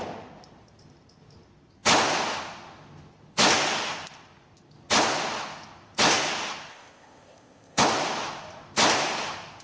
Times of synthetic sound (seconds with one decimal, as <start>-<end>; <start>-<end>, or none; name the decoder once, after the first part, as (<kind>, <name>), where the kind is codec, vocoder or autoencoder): 6.7-7.8 (codec, ZipCodec)